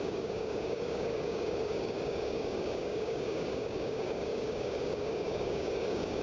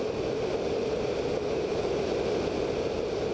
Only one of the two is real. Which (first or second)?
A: second